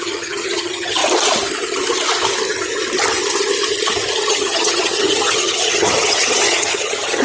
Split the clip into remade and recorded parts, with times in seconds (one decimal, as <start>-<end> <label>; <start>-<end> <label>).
0.0-1.0 remade; 1.0-4.3 recorded; 4.3-7.2 remade